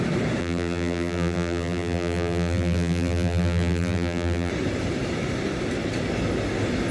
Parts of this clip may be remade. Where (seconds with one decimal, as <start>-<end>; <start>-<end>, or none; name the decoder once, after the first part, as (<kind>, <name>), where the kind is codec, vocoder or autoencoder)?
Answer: 0.4-4.5 (vocoder, BigVGAN v2)